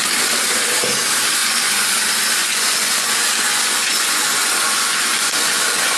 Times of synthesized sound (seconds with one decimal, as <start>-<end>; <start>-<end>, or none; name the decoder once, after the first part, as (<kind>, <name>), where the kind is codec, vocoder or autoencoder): 1.4-1.9 (vocoder, Vocos); 2.4-6.0